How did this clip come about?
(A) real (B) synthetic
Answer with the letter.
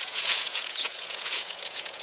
B